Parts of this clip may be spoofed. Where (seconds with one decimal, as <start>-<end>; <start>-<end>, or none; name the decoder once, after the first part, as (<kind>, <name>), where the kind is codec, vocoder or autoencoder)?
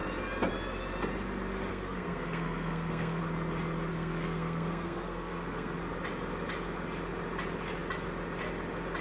1.7-3.2 (codec, SNAC); 3.9-5.8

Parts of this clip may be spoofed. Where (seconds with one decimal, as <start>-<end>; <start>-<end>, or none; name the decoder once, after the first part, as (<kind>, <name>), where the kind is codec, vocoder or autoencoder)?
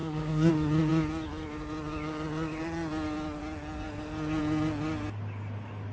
0.0-0.5 (codec, SNAC)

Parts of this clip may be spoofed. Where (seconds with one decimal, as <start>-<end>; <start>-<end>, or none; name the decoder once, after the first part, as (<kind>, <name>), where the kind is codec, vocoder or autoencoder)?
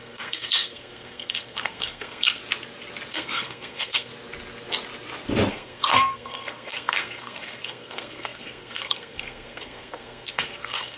0.0-2.4 (codec, SNAC); 3.1-4.1; 5.5-11.0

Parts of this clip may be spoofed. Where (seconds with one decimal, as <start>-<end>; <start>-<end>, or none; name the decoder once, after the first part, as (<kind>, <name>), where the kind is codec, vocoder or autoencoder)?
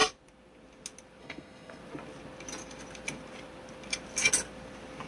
1.2-1.8 (codec, SNAC)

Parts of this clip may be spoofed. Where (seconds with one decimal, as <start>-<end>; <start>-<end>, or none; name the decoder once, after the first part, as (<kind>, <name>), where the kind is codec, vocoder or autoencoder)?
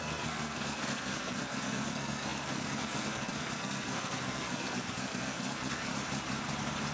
0.0-5.9 (codec, SNAC)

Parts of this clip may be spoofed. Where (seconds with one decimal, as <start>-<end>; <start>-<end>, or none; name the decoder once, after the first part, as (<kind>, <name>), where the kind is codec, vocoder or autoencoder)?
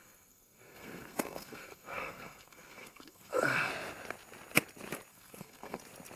0.0-3.7 (codec, SNAC); 5.1-5.8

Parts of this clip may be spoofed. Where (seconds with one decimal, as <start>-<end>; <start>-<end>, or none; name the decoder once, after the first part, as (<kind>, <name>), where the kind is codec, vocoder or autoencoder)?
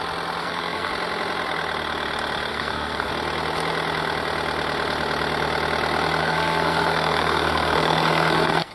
0.4-0.9 (codec, SNAC); 2.5-3.1; 6.2-8.7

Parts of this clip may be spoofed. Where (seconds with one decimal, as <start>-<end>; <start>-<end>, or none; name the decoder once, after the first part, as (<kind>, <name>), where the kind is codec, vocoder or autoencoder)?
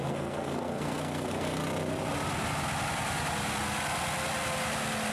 0.0-1.6 (codec, SNAC)